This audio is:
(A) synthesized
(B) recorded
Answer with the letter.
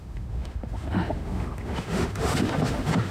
A